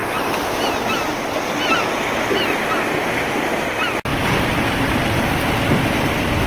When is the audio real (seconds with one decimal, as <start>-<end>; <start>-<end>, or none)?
0.0-6.5